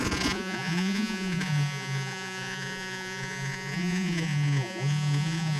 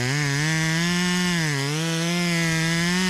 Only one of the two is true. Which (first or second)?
second